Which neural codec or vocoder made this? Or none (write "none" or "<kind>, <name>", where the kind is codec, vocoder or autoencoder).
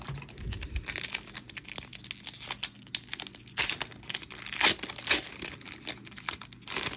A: none